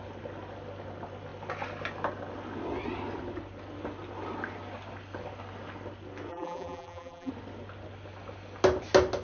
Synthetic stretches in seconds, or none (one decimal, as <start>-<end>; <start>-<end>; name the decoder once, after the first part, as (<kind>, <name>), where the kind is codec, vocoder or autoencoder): 6.3-7.3 (vocoder, BigVGAN v2)